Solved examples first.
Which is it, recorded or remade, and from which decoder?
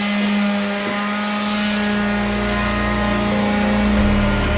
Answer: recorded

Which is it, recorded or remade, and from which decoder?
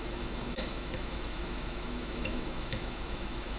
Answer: remade, autoencoder, DAC-VAE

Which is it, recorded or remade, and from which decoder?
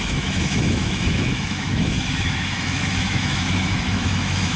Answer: remade, autoencoder, DAC-VAE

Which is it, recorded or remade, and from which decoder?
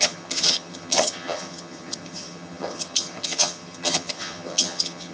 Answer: remade, vocoder, HiFi-GAN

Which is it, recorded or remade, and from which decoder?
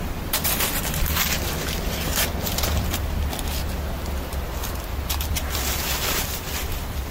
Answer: remade, vocoder, BigVGAN v2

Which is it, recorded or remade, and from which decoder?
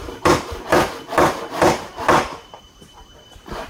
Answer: remade, vocoder, BigVGAN v2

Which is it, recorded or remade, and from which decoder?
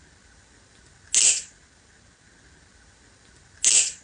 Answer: recorded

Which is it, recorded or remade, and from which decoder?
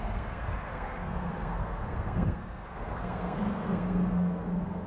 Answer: remade, codec, SNAC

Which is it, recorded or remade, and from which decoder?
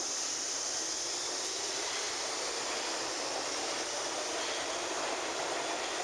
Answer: recorded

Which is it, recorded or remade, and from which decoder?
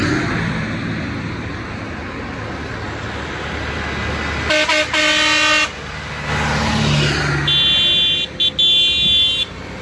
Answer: recorded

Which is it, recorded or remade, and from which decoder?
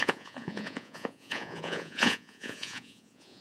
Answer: remade, vocoder, Vocos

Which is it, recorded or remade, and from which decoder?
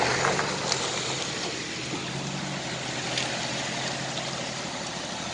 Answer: recorded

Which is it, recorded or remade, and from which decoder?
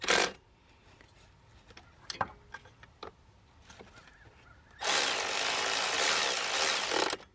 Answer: recorded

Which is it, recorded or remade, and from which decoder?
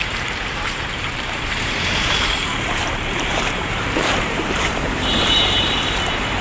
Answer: remade, vocoder, BigVGAN v2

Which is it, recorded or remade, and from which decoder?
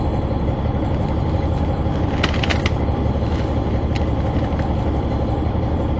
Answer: recorded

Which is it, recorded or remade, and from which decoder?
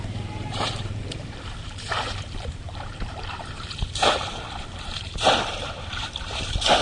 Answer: remade, vocoder, BigVGAN v2